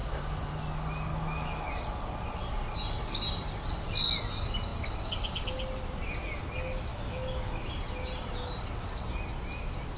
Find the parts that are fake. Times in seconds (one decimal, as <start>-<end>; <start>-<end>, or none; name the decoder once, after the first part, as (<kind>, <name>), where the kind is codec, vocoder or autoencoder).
1.1-1.7 (autoencoder, DAC-VAE); 6.9-7.7